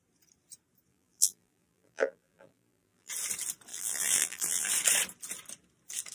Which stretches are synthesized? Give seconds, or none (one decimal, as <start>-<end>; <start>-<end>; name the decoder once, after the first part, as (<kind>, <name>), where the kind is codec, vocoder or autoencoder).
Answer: 0.9-3.1 (vocoder, BigVGAN v2); 3.7-4.7

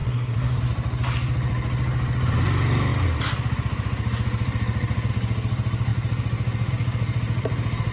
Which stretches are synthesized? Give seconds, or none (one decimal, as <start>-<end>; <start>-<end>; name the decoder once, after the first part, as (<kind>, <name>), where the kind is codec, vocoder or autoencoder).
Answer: 0.0-0.6 (codec, SNAC)

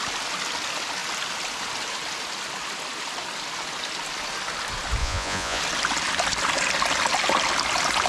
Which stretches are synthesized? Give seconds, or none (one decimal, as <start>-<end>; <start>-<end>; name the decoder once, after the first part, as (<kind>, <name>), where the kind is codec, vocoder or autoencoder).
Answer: 5.0-5.6 (vocoder, Vocos)

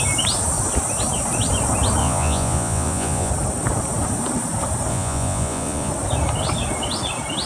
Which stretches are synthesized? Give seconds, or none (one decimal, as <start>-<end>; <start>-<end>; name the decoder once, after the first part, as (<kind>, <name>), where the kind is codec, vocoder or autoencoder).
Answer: 2.0-3.3 (vocoder, Vocos); 4.9-5.9

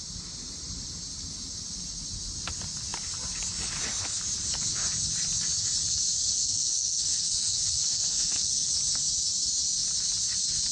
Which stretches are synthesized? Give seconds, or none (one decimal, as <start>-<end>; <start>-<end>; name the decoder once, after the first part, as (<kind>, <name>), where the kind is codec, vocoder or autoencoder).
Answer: 5.8-8.7 (codec, SNAC)

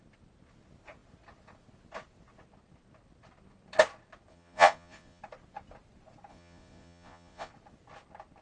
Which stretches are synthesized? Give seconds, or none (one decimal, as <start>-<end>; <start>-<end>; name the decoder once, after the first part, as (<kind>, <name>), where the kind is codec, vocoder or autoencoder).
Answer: 4.3-5.2 (vocoder, Vocos); 6.3-7.5

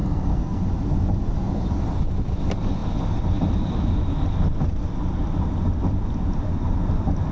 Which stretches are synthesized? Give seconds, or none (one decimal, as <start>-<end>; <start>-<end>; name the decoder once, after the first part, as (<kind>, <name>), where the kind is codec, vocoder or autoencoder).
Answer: 0.0-0.6 (codec, SNAC)